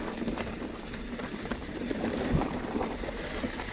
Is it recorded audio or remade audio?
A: remade